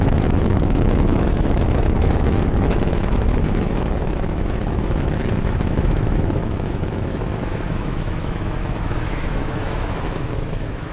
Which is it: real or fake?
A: fake